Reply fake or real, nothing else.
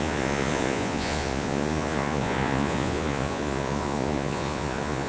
fake